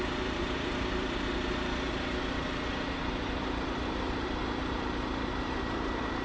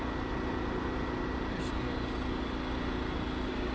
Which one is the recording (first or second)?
second